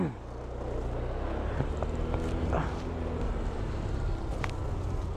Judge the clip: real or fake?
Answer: real